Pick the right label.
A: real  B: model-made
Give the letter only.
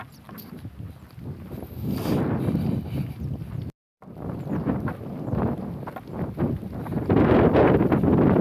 A